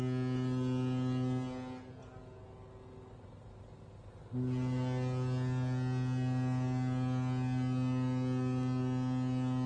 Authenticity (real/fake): real